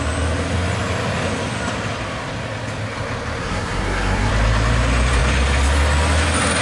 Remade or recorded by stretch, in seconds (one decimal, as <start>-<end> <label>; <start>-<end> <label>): 0.0-3.4 recorded; 3.4-4.3 remade; 4.3-6.6 recorded